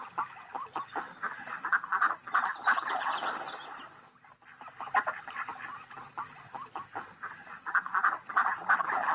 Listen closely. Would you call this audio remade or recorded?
recorded